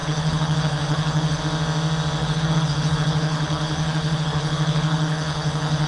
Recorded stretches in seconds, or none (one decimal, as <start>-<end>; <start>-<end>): 1.4-2.2

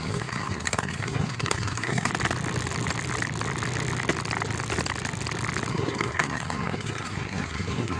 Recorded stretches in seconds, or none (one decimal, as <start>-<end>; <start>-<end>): 2.1-5.7

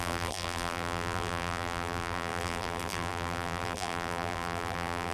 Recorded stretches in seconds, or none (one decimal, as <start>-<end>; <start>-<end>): none

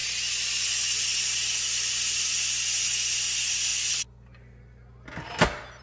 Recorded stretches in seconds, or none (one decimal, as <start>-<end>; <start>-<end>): 0.0-5.8

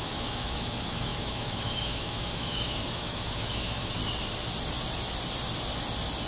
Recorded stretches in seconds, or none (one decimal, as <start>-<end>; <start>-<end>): 4.0-6.3

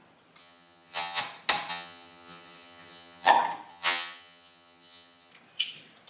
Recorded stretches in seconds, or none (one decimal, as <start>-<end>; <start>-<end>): 0.0-0.4; 1.2-1.7; 3.3-3.7; 5.3-6.1

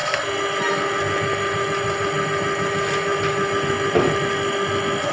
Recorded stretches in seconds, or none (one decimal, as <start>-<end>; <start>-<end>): 0.0-5.1

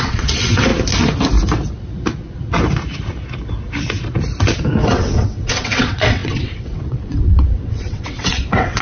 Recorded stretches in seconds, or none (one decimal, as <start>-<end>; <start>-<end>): 0.7-4.8